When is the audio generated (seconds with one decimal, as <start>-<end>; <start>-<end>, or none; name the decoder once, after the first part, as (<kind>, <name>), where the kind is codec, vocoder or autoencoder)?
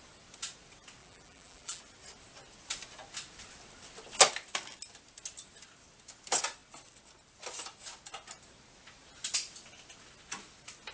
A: 1.0-1.8 (vocoder, BigVGAN v2)